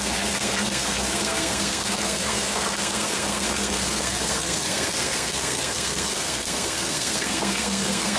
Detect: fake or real fake